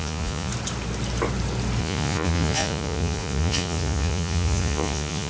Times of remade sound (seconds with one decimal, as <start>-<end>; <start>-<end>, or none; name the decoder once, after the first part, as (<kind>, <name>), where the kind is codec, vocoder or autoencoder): 0.0-0.5 (vocoder, Vocos); 1.8-5.3